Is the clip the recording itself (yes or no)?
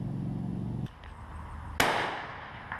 yes